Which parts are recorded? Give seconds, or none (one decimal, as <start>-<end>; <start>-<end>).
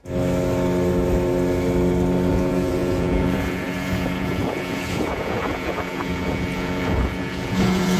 0.0-2.3